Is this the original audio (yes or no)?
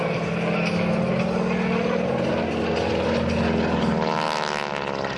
yes